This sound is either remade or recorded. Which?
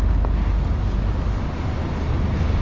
recorded